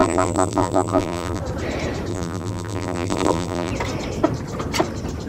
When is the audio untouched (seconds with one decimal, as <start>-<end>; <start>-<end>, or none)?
1.4-2.1; 3.7-5.3